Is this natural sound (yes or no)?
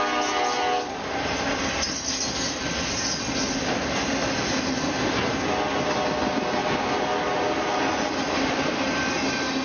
yes